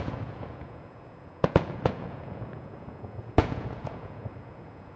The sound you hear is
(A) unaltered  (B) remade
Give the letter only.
B